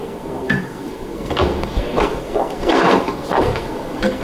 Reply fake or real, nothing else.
fake